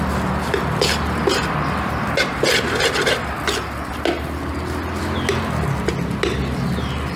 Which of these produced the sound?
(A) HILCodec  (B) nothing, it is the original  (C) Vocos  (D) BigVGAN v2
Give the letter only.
B